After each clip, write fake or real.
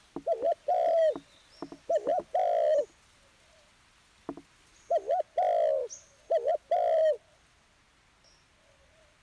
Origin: real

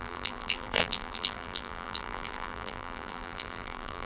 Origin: fake